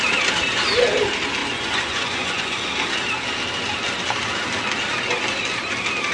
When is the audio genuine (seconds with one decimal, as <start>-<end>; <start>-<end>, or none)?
0.0-1.4; 2.6-6.1